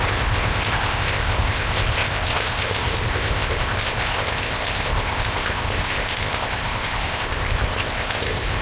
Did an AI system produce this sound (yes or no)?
yes